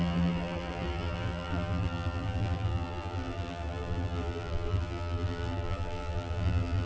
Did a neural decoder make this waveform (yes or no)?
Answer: yes